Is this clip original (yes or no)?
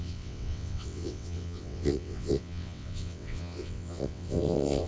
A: no